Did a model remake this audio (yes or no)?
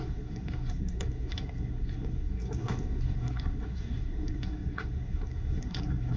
yes